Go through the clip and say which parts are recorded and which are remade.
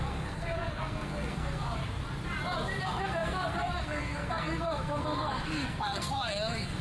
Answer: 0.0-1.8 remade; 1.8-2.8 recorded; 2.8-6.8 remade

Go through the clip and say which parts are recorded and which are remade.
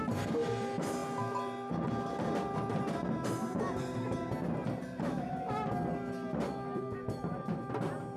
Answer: 0.0-8.2 recorded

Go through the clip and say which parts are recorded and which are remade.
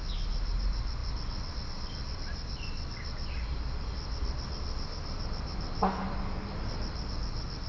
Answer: 0.0-7.7 recorded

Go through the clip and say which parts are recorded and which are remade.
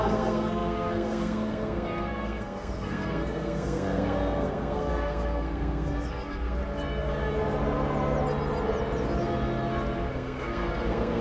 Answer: 0.0-6.6 remade; 6.6-10.1 recorded; 10.1-11.2 remade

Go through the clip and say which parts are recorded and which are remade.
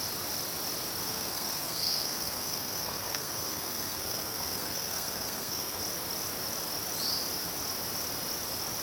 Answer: 0.0-1.0 recorded; 1.0-5.8 remade; 5.8-8.8 recorded